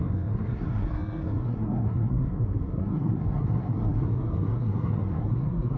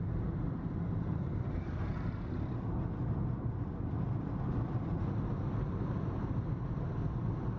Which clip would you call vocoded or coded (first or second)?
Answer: first